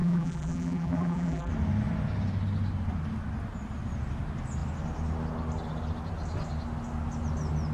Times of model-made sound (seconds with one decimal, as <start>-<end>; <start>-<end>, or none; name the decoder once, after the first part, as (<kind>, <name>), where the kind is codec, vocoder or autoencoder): 0.0-1.5 (vocoder, BigVGAN v2)